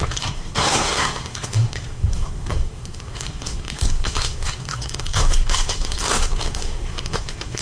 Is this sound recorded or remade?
remade